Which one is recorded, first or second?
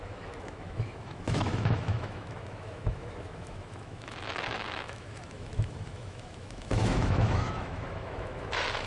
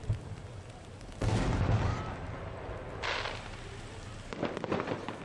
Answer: second